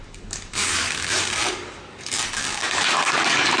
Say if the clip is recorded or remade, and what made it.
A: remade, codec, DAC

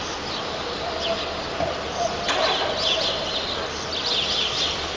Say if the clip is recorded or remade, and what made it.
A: recorded